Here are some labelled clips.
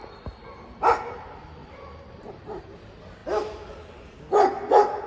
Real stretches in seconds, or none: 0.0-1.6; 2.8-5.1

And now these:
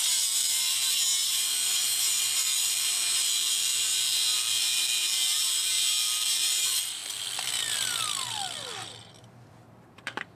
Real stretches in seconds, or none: 7.0-9.3

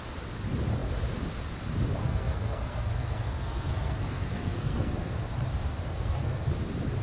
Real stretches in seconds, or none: 0.0-2.0; 5.3-5.9; 6.5-7.0

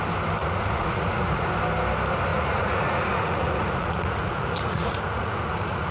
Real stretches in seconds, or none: 0.0-0.4; 1.5-2.3